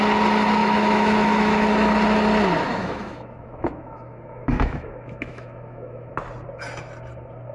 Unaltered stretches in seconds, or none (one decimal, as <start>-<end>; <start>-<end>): 0.0-0.6; 1.7-2.7; 6.1-7.5